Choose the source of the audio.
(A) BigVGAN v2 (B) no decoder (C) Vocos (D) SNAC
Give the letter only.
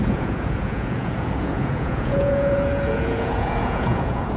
C